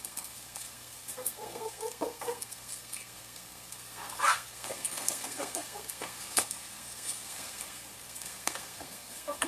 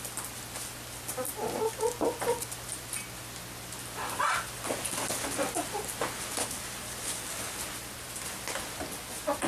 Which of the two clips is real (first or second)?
second